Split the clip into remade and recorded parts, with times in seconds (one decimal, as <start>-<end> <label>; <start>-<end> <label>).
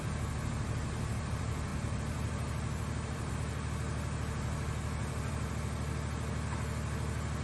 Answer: 0.0-1.7 recorded; 1.7-3.3 remade; 3.3-5.0 recorded; 5.0-5.5 remade; 5.5-7.4 recorded